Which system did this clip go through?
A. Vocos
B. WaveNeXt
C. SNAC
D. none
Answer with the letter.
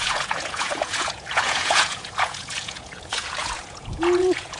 A